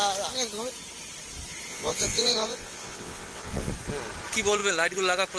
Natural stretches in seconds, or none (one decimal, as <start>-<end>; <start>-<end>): 0.0-1.7; 3.7-5.4